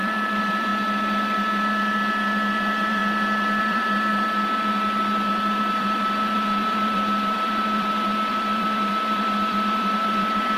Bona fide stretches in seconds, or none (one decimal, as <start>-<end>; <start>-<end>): 0.7-2.6; 3.0-3.6; 4.1-5.7